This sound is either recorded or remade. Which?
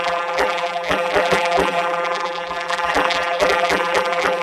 remade